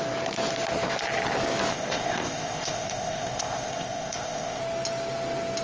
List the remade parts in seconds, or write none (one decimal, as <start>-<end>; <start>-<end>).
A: 1.7-4.6